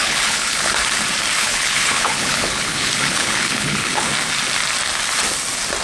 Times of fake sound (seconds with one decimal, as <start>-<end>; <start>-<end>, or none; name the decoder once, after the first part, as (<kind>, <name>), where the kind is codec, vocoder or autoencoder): 0.0-0.7 (codec, HILCodec); 1.4-4.1